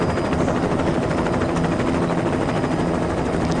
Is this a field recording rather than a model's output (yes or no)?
yes